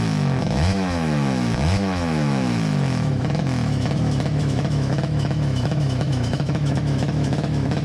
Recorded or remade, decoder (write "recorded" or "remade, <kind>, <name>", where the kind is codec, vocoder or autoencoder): remade, autoencoder, DAC-VAE